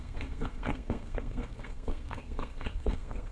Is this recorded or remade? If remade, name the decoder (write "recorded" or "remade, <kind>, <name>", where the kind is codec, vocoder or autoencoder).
remade, codec, SNAC